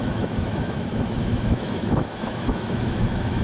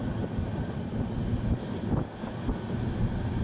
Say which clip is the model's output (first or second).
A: first